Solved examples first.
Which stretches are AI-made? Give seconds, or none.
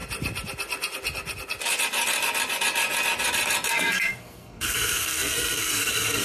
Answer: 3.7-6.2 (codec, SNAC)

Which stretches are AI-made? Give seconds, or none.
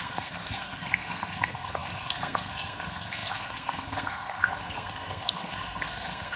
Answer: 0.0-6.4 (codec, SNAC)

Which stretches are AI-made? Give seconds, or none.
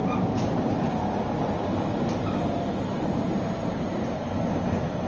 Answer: 0.0-0.9 (vocoder, BigVGAN v2); 2.4-4.3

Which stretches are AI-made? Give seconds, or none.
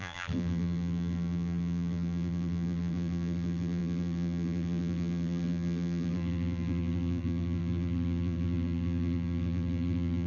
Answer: 0.0-10.3 (vocoder, BigVGAN v2)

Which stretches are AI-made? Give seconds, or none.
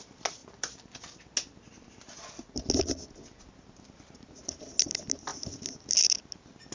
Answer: none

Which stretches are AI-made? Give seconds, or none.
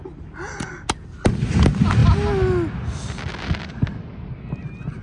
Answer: none